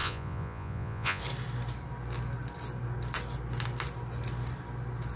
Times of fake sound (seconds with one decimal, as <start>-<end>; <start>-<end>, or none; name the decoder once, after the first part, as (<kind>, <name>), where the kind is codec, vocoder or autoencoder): 0.0-1.2 (vocoder, Vocos)